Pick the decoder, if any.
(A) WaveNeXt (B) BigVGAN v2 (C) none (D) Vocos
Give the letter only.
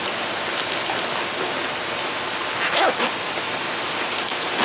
C